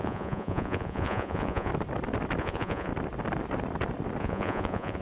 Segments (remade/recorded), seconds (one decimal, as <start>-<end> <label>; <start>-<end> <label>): 0.0-1.7 remade; 1.7-2.4 recorded; 2.4-2.9 remade; 2.9-4.2 recorded; 4.2-5.0 remade